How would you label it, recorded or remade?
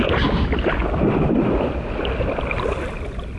recorded